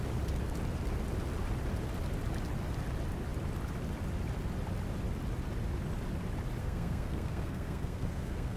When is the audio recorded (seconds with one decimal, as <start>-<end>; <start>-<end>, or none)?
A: 0.0-6.6